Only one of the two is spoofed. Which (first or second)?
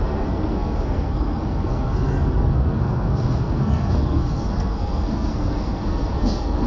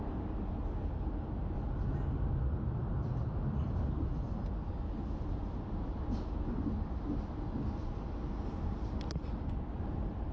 first